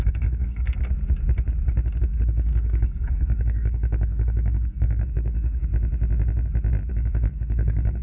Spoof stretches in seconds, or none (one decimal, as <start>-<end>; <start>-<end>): 0.0-0.8; 2.0-5.7; 6.9-8.0